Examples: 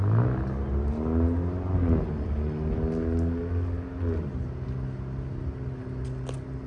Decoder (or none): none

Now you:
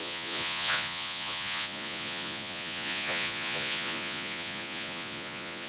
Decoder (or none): vocoder, Vocos